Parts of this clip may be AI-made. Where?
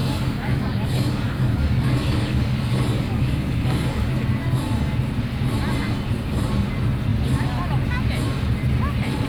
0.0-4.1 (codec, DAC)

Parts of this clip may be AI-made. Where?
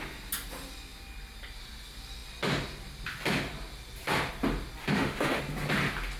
4.8-5.4 (autoencoder, DAC-VAE)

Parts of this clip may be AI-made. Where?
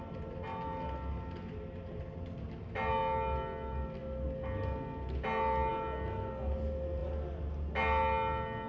none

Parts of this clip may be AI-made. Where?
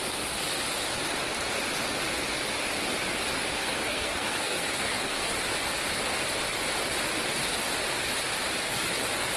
3.5-5.4 (codec, SNAC)